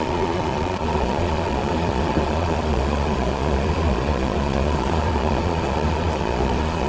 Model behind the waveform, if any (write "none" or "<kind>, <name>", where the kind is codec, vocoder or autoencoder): vocoder, Vocos